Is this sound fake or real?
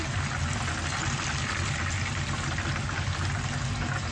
real